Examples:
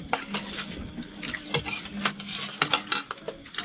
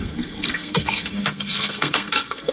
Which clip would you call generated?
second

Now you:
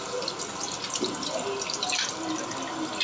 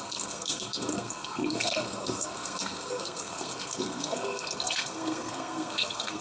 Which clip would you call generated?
second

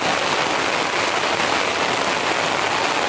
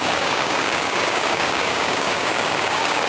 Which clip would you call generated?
second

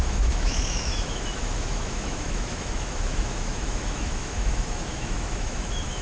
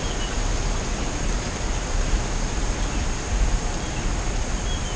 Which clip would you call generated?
first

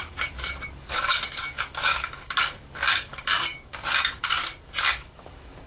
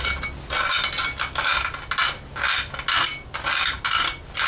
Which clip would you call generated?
first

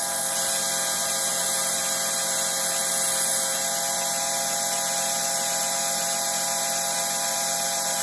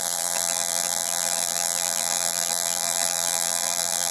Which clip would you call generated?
second